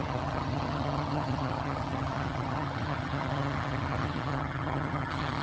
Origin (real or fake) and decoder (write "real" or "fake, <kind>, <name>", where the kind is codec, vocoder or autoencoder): fake, vocoder, HiFi-GAN